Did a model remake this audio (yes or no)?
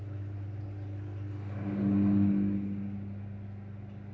no